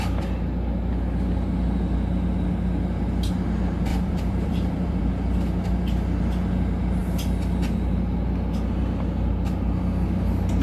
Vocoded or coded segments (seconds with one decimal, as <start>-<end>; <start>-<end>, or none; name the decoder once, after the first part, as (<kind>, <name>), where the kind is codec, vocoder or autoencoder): 3.9-5.0 (vocoder, BigVGAN v2)